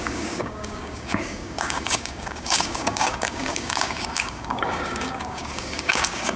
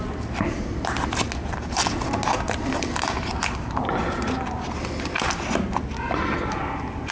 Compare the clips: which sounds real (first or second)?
second